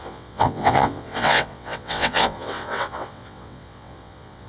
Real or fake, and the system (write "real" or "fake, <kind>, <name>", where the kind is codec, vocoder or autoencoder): fake, vocoder, WaveNeXt